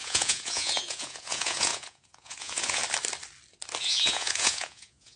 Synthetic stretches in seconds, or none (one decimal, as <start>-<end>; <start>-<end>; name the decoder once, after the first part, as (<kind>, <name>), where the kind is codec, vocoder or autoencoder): 0.0-2.8 (vocoder, Vocos); 3.8-5.2